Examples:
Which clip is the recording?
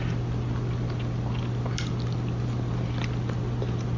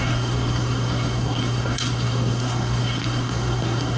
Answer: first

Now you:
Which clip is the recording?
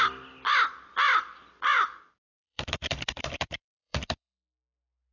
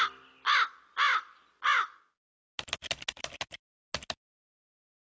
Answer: second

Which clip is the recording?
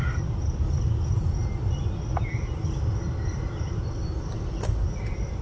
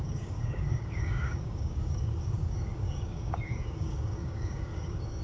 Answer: first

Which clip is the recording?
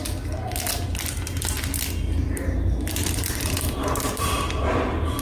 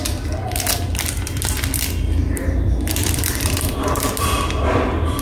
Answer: first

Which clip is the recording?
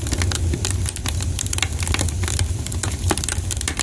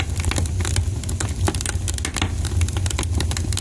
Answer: second